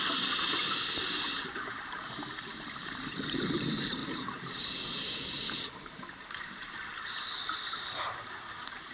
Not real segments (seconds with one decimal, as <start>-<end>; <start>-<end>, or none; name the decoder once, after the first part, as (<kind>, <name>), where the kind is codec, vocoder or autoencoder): 0.0-8.9 (vocoder, BigVGAN v2)